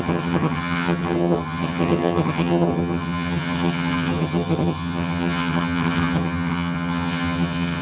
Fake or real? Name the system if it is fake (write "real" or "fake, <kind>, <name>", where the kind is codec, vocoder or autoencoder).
fake, vocoder, HiFi-GAN